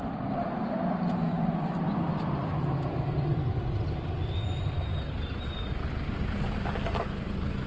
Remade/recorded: recorded